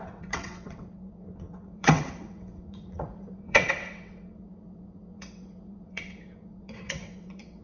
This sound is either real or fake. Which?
fake